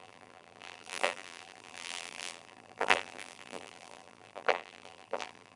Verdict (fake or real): fake